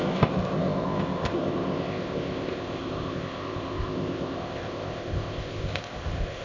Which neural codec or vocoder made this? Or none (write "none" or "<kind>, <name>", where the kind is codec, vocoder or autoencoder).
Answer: codec, ZipCodec